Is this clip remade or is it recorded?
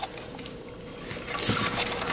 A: recorded